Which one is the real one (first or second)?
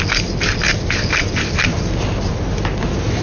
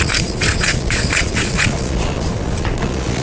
first